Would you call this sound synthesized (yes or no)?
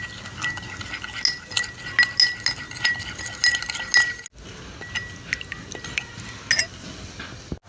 no